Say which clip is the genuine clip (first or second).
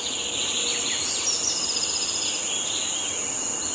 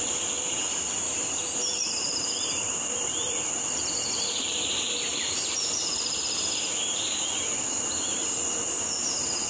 first